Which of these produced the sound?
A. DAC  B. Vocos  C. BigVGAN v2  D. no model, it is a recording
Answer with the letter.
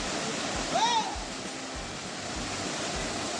D